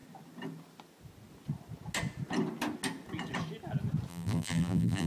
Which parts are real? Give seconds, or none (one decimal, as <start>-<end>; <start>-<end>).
0.0-4.1